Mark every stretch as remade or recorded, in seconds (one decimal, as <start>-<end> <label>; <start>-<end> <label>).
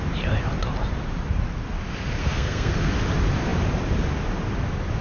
0.0-2.2 recorded; 2.2-2.9 remade; 2.9-5.0 recorded